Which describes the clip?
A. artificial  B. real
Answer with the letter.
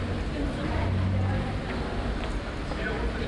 B